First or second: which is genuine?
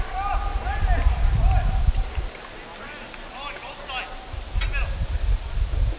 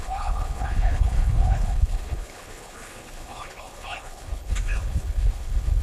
first